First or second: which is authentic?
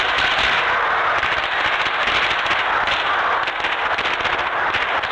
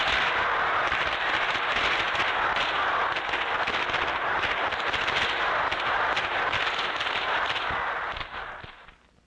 first